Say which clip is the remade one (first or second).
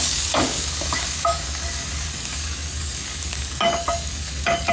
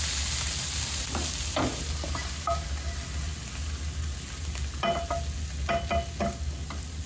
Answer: first